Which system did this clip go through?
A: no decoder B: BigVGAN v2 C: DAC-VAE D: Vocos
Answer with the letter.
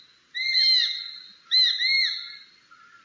A